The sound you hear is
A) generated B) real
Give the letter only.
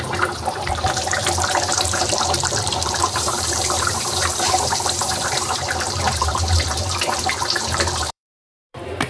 A